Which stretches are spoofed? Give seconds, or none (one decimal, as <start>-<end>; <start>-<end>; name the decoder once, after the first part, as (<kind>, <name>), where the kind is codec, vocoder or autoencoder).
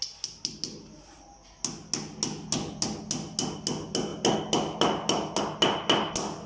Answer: none